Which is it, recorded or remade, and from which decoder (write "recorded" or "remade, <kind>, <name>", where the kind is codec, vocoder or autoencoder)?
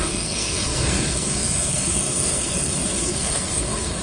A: remade, codec, SNAC